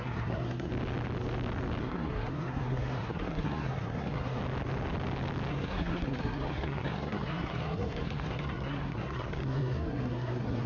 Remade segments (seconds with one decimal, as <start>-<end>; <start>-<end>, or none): 0.0-0.7; 1.8-4.4; 5.5-10.7